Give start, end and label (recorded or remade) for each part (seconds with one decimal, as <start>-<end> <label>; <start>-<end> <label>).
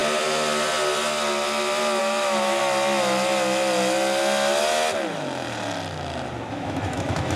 0.0-2.0 recorded; 2.0-2.6 remade; 2.6-6.5 recorded; 6.5-7.4 remade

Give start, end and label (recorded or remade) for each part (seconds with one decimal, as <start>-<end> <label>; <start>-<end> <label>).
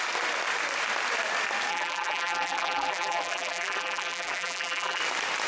0.0-1.7 recorded; 1.7-5.0 remade; 5.0-5.5 recorded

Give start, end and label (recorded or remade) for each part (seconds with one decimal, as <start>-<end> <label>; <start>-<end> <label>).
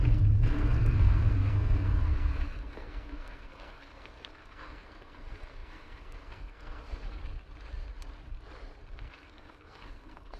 0.0-7.2 remade; 7.2-8.9 recorded; 8.9-10.4 remade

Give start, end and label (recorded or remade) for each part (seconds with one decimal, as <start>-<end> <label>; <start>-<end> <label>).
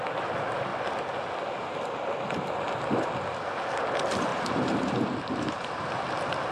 0.0-4.3 recorded; 4.3-5.8 remade; 5.8-6.5 recorded